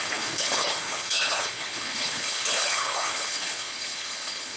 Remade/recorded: remade